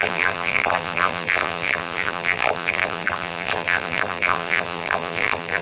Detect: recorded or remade remade